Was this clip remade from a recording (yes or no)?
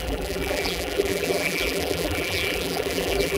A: yes